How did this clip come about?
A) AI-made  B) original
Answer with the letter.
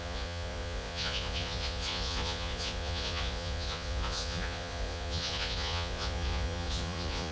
A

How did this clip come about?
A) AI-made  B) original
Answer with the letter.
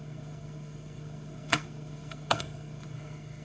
A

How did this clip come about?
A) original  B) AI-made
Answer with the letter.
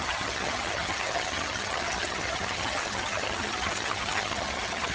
B